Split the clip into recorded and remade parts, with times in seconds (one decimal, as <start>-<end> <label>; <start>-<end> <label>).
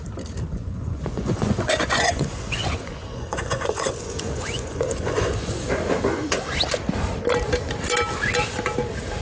0.0-0.5 recorded; 0.5-5.7 remade; 5.7-9.2 recorded